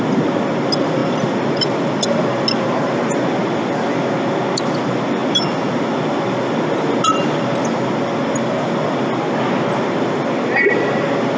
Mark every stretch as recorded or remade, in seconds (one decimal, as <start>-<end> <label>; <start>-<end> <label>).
0.0-11.4 recorded